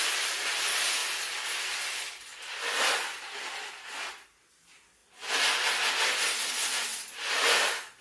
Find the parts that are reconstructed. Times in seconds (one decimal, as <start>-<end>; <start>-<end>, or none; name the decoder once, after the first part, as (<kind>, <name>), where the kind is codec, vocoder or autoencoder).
none